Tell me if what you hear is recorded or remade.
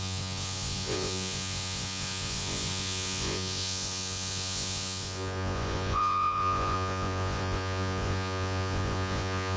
remade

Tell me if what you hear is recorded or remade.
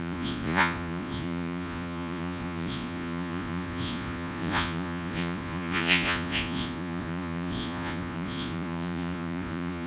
remade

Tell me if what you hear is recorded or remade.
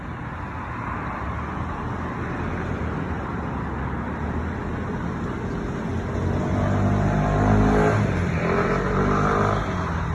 recorded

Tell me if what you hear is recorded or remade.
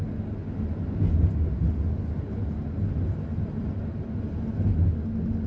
recorded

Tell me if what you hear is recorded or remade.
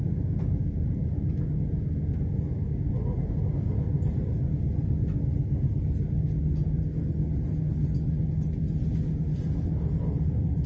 recorded